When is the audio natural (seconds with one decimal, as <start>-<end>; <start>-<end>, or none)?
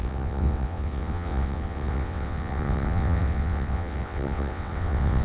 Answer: none